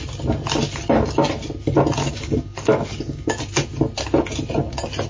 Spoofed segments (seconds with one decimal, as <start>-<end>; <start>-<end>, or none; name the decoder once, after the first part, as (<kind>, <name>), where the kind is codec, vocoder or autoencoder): 2.0-3.4 (codec, DAC)